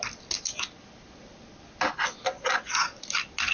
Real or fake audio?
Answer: real